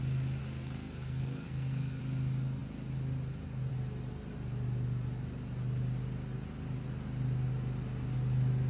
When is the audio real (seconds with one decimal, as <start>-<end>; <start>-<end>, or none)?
0.0-0.4; 2.0-8.7